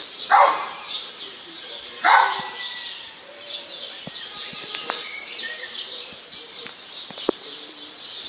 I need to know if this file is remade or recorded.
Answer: remade